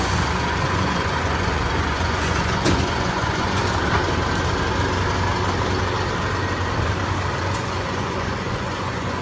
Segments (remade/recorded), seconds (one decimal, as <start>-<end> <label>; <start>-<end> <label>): 0.0-3.6 remade; 3.6-7.4 recorded; 7.4-9.2 remade